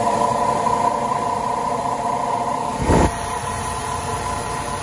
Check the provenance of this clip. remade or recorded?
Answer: remade